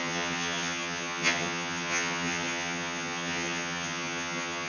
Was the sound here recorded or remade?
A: remade